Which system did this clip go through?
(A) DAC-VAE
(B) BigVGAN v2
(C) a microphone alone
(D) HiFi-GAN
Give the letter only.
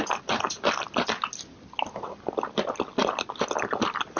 C